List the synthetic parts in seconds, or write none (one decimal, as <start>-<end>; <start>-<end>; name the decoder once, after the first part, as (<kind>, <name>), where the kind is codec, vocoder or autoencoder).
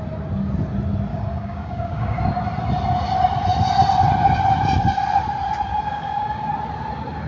1.1-2.2 (codec, DAC); 5.7-6.5